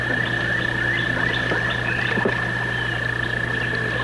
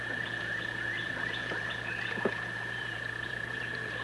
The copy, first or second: second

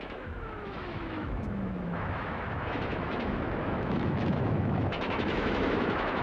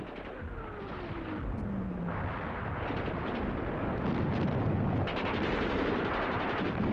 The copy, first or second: first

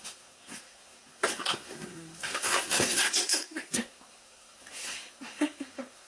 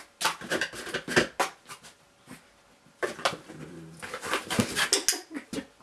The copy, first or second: first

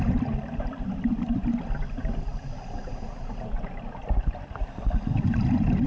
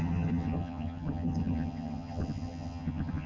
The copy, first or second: second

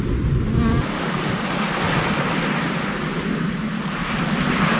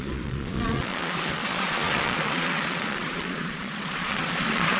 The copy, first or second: second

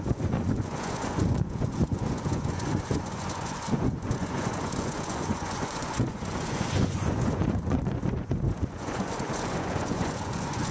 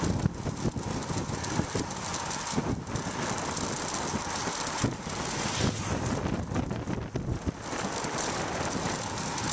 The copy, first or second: first